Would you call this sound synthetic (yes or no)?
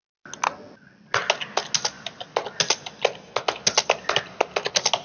no